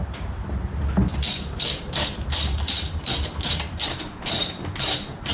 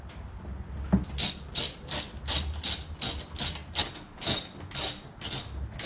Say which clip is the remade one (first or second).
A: first